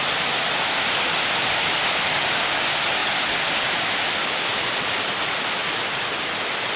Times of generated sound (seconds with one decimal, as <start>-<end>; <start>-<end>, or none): 2.1-2.6